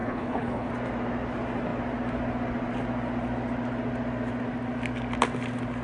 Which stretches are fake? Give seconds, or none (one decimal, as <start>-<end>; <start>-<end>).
0.0-0.7